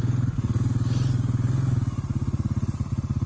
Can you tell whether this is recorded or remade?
recorded